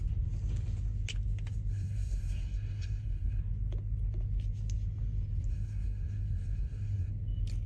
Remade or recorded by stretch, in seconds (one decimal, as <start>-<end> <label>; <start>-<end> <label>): 0.0-1.7 recorded; 1.7-3.4 remade; 3.4-5.5 recorded; 5.5-7.1 remade; 7.1-7.7 recorded